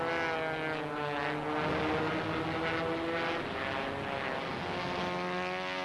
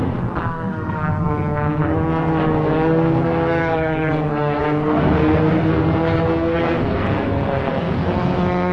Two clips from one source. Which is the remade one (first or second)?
second